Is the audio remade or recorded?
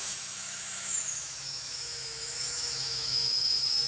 remade